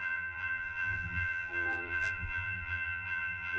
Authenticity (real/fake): fake